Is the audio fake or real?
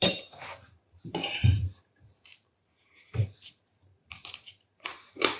fake